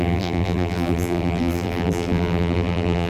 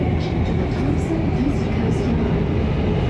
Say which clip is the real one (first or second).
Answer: second